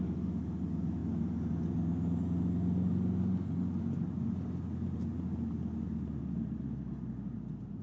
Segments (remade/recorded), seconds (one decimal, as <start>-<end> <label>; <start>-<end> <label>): 0.0-7.8 recorded